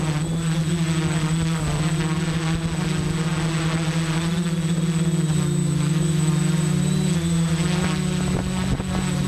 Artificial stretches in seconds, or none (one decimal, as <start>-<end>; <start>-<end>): 5.6-6.3